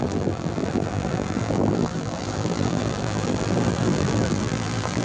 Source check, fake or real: fake